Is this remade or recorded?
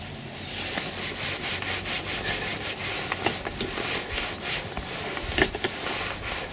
recorded